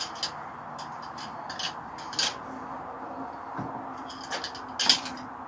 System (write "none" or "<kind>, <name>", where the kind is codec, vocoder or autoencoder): none